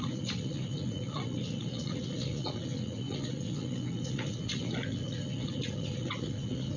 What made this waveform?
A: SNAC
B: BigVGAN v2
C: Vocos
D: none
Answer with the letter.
C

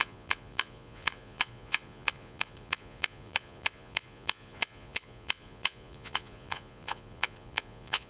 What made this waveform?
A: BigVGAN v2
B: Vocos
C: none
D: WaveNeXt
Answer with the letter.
B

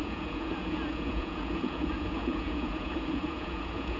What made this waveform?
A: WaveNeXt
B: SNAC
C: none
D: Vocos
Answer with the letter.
D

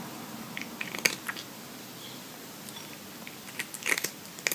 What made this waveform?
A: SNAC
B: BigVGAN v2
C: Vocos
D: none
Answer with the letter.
D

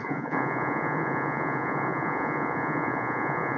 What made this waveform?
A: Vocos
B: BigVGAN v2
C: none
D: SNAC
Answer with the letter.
A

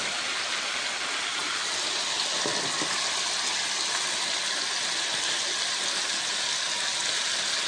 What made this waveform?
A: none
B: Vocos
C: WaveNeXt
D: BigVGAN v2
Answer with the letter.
A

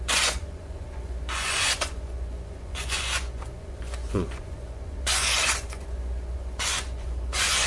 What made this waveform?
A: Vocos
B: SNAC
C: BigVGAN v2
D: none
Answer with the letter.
A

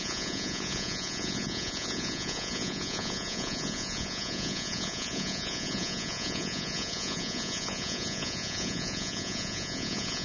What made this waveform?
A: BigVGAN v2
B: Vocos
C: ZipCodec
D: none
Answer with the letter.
B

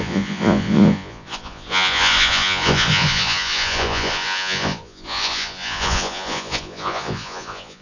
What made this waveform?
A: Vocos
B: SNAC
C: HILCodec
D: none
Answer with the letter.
A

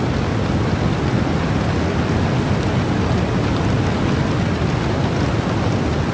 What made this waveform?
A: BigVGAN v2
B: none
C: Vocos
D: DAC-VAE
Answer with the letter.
B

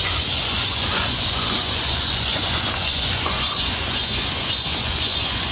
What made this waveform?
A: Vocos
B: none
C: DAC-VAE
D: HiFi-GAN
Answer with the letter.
A